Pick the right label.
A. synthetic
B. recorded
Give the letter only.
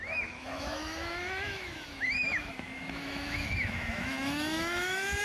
A